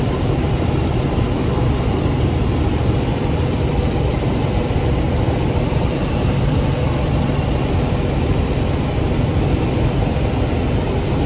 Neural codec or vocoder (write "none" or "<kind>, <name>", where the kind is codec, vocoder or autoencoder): vocoder, BigVGAN v2